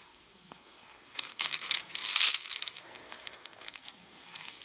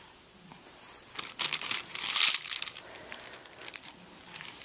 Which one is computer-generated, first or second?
first